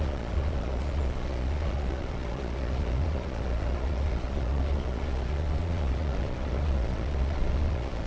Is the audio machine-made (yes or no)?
yes